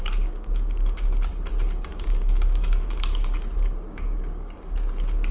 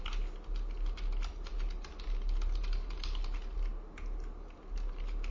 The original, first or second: second